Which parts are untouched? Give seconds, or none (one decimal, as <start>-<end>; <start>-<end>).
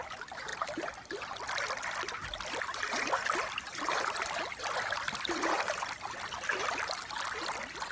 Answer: 0.0-7.9